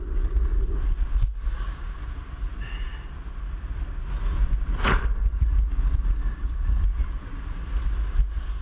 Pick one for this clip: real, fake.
real